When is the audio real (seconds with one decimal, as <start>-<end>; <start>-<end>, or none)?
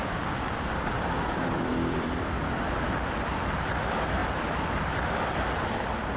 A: none